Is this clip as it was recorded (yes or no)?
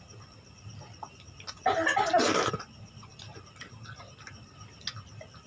yes